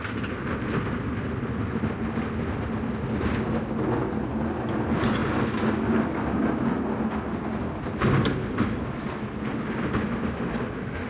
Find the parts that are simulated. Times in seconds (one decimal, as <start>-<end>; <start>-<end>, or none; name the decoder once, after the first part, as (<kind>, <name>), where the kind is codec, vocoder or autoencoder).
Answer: none